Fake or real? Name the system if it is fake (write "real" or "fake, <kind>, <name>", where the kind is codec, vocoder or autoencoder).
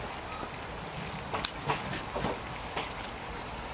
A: real